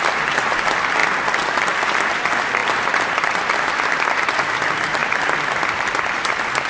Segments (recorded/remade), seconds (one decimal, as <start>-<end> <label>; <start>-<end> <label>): 0.0-6.7 recorded